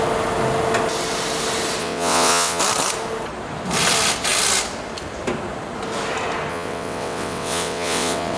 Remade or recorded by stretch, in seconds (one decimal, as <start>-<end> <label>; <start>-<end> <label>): 0.0-1.8 recorded; 1.8-2.6 remade; 2.6-6.5 recorded; 6.5-8.4 remade